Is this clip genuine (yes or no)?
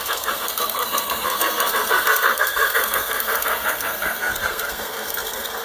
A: no